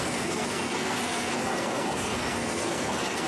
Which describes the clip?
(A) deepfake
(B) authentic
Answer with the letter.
A